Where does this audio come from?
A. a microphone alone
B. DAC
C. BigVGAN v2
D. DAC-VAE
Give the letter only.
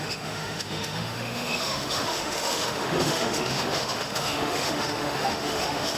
D